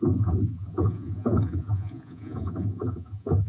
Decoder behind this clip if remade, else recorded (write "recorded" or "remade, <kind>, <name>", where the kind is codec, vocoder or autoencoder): remade, vocoder, Vocos